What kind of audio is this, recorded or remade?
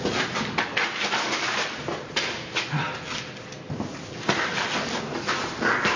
recorded